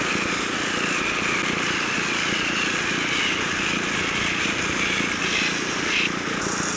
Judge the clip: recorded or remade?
recorded